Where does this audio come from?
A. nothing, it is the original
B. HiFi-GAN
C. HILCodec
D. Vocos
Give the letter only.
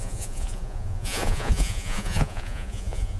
D